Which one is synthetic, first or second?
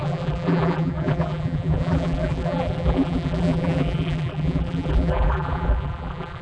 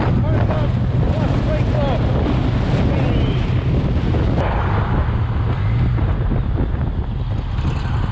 first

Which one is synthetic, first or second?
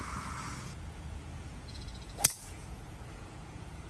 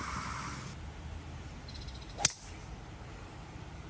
first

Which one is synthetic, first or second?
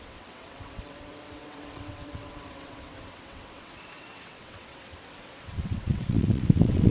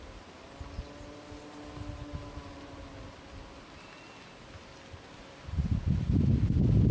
first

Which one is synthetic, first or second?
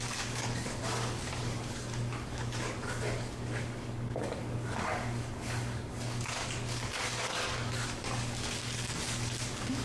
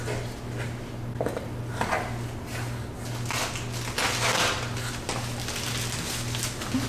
first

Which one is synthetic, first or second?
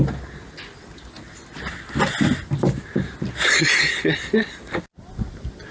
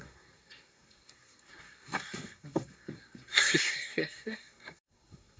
second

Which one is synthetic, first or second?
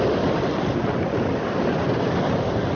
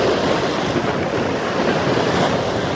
first